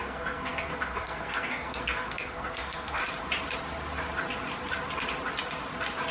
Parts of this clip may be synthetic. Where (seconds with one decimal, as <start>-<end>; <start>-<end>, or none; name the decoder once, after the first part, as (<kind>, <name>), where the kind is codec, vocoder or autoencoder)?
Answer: 0.0-3.0 (codec, SNAC)